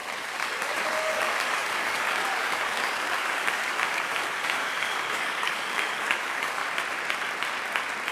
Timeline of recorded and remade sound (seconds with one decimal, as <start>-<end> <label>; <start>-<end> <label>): 0.0-6.6 remade; 6.6-8.1 recorded